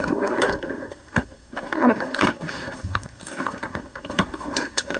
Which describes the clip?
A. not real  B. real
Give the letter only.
A